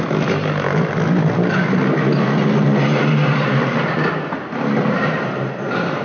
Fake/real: real